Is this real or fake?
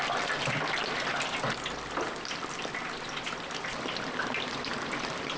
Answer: real